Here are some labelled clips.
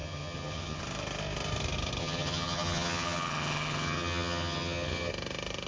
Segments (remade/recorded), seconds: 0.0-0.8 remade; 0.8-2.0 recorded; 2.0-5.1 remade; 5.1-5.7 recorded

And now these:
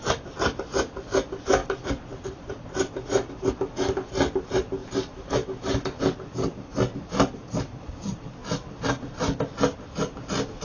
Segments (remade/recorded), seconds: 0.0-10.6 recorded

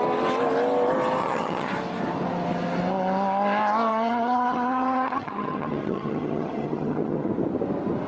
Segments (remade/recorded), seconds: 0.0-1.2 recorded; 1.2-1.7 remade; 1.7-3.9 recorded; 3.9-7.3 remade; 7.3-8.1 recorded

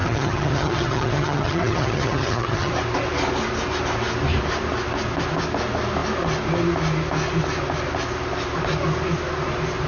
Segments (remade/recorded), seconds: 0.0-2.7 remade; 2.7-9.9 recorded

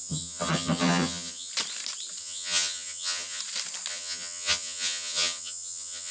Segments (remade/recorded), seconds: 0.0-1.5 remade; 1.5-2.2 recorded; 2.2-3.4 remade; 3.4-3.9 recorded; 3.9-6.1 remade

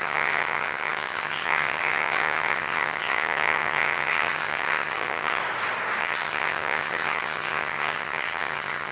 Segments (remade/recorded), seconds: 0.0-5.4 remade; 5.4-6.0 recorded; 6.0-8.9 remade

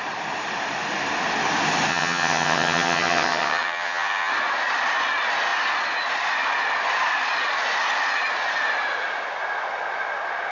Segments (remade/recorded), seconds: 0.0-1.9 recorded; 1.9-4.3 remade; 4.3-10.5 recorded

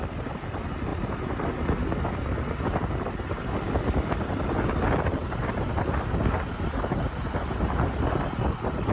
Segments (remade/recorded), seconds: 0.0-8.9 recorded